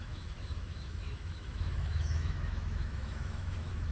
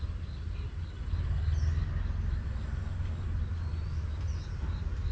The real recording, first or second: second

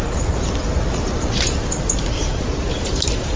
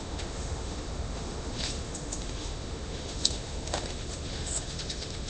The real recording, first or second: first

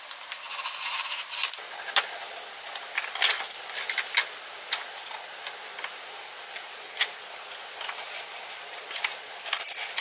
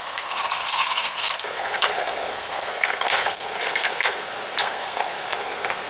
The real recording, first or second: first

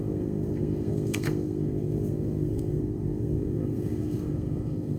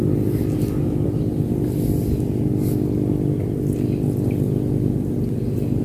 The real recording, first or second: second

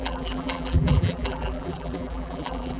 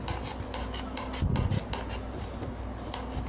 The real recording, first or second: second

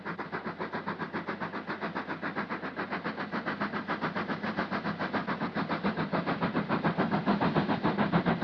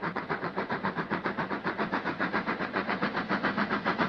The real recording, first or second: first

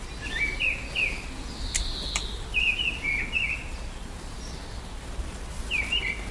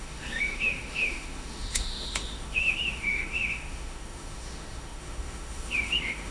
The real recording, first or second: first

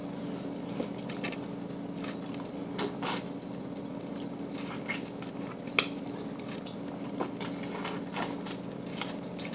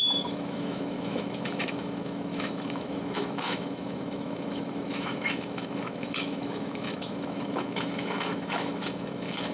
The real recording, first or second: first